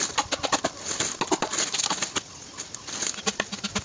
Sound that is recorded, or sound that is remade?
recorded